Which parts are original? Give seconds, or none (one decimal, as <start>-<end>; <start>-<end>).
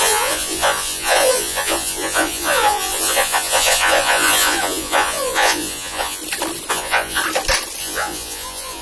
6.2-6.7; 7.2-7.8